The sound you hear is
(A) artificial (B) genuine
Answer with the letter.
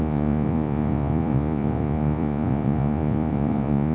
A